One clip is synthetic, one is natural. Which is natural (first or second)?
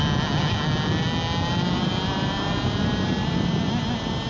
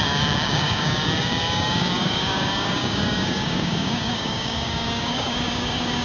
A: first